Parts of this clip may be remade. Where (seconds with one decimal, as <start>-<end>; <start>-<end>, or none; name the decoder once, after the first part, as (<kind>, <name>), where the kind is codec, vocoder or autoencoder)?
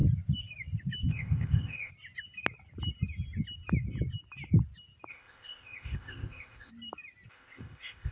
1.1-1.9 (codec, ZipCodec); 5.1-6.7; 7.3-8.1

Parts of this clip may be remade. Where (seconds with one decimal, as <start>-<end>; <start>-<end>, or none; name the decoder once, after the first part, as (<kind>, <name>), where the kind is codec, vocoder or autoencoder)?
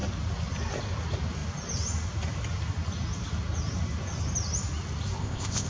5.2-5.7 (codec, ZipCodec)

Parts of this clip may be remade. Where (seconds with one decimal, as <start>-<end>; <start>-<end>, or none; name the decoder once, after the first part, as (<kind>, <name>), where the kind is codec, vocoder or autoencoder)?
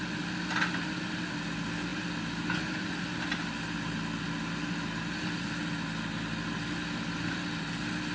none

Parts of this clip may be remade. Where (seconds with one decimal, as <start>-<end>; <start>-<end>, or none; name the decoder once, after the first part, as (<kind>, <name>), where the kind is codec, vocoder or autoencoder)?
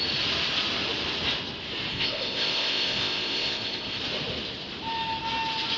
1.9-4.0 (codec, ZipCodec)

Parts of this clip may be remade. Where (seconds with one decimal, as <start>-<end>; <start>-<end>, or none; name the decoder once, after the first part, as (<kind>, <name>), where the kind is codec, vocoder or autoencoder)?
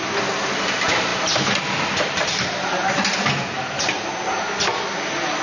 none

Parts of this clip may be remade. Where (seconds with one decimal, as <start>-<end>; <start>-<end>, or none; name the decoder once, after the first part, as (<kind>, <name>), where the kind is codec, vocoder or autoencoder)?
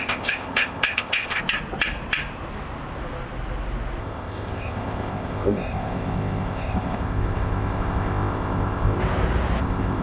0.0-1.4 (codec, ZipCodec); 4.0-9.0; 9.6-10.0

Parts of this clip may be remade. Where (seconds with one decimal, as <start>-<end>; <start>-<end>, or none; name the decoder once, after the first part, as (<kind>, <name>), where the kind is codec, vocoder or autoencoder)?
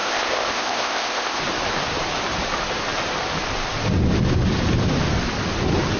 0.0-1.4 (codec, ZipCodec)